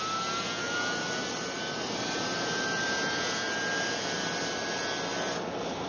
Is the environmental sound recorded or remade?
recorded